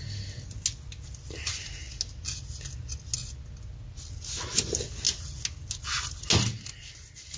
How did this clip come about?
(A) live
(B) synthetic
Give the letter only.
A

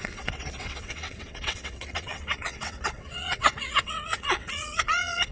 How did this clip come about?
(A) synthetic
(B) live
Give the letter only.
A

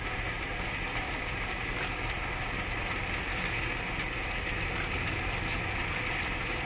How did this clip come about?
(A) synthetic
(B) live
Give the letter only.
B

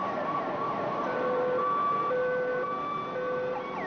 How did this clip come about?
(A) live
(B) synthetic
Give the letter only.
A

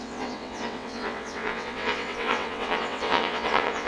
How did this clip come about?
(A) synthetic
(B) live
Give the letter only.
A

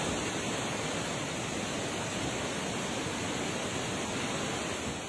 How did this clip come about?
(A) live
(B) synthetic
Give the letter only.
A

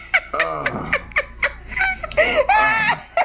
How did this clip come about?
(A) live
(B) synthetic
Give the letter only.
A